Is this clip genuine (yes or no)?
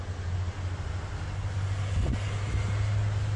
yes